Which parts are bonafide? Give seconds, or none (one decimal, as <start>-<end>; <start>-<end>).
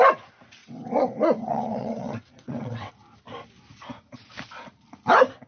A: 0.0-0.6; 2.9-5.5